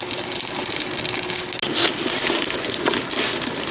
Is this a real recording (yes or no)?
yes